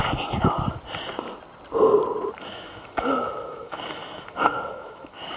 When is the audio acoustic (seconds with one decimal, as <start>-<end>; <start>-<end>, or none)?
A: 0.0-2.4